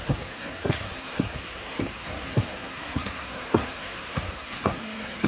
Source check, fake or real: fake